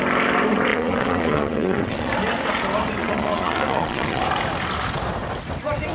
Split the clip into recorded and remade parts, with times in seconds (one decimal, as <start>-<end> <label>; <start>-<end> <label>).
0.0-0.7 recorded; 0.7-2.1 remade; 2.1-3.0 recorded; 3.0-4.2 remade; 4.2-5.9 recorded

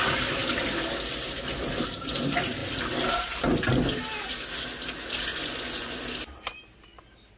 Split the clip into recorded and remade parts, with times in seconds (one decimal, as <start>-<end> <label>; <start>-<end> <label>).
0.0-5.3 recorded; 5.3-6.0 remade; 6.0-7.4 recorded